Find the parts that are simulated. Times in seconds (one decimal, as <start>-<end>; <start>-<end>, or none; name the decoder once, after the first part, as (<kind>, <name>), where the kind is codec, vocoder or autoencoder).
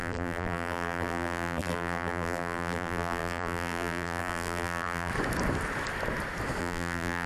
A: 0.0-5.1 (vocoder, BigVGAN v2); 6.6-7.3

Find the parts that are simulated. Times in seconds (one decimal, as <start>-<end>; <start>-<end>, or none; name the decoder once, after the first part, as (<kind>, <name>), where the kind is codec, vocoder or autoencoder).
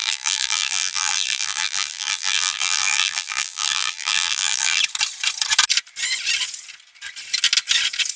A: 0.0-4.8 (vocoder, BigVGAN v2)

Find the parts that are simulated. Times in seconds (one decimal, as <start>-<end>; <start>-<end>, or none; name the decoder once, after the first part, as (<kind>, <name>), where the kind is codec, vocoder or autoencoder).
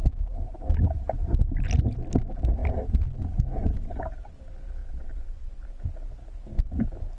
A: 1.2-1.8 (vocoder, BigVGAN v2); 4.8-5.9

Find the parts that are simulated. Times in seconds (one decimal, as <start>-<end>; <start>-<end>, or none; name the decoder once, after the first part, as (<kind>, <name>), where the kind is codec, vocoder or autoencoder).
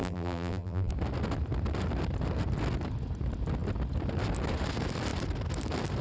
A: 0.0-0.9 (vocoder, BigVGAN v2)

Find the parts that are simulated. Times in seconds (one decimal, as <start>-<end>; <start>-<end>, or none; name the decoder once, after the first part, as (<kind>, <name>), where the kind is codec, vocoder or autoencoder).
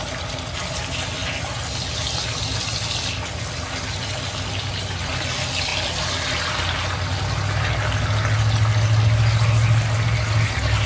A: none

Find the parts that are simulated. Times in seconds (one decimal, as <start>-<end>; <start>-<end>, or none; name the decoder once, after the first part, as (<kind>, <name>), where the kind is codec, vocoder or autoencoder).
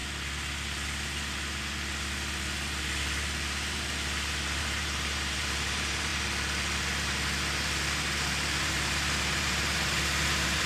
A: 4.6-6.1 (vocoder, BigVGAN v2); 8.6-10.7